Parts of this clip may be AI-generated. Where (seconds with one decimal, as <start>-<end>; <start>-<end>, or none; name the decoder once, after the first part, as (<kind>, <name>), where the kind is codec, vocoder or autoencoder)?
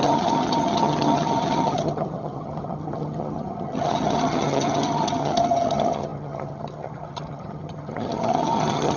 0.0-9.0 (vocoder, HiFi-GAN)